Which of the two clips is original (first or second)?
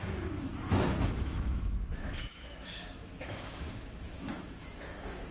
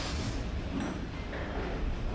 second